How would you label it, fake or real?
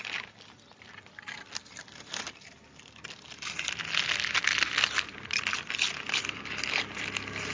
real